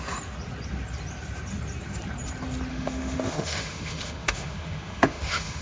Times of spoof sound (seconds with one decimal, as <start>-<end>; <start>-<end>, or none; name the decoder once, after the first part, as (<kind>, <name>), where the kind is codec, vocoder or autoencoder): 2.7-5.6 (autoencoder, DAC-VAE)